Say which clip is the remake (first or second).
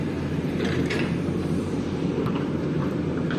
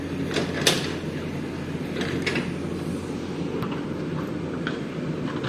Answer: first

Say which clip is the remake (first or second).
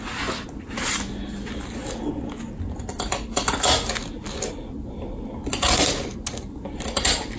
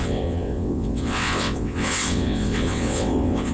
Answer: second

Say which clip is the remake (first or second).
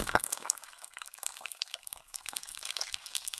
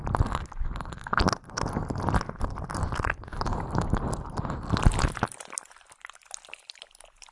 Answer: first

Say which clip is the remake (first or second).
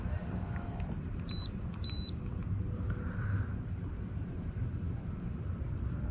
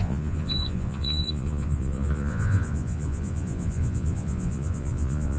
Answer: second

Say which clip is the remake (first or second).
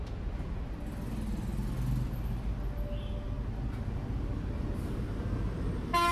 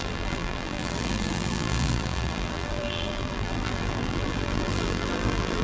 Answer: second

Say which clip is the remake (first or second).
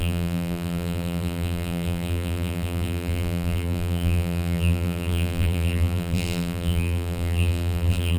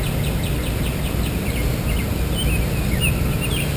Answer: first